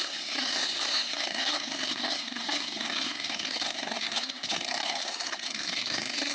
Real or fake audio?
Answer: fake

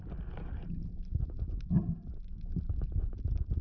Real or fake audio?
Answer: real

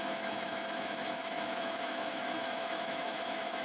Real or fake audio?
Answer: fake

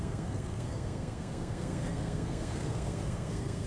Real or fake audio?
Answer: fake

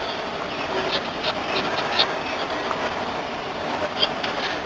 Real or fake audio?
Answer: real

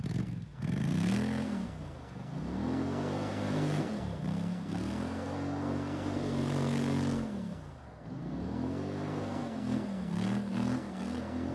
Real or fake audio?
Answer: fake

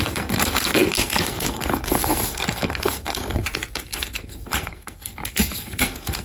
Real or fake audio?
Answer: fake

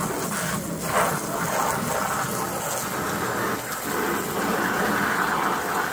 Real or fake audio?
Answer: real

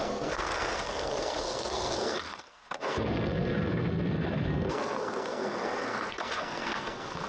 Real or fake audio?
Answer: fake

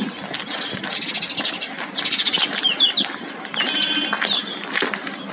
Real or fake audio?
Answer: real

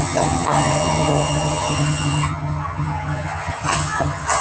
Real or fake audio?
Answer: fake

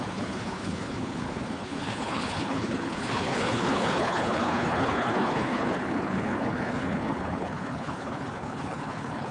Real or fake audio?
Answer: fake